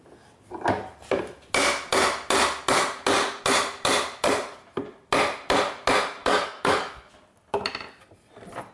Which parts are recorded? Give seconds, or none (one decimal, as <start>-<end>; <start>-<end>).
0.0-6.2; 7.1-8.7